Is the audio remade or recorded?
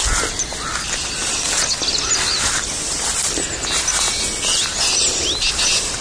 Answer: recorded